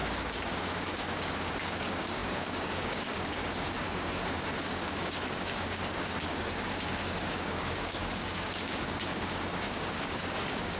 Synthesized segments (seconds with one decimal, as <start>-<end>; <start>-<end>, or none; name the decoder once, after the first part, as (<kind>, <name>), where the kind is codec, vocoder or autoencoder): 0.0-10.8 (codec, DAC)